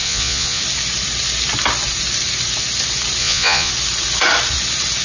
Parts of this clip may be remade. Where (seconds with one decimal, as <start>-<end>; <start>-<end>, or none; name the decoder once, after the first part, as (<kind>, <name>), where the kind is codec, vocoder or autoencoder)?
0.0-0.6 (vocoder, Vocos); 3.2-3.7